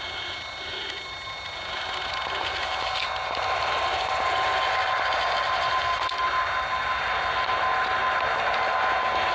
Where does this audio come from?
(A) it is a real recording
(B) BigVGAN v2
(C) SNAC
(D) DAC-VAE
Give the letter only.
A